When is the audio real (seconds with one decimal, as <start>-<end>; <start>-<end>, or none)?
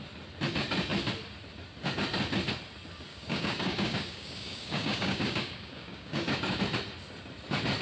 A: 0.0-3.1; 6.6-7.8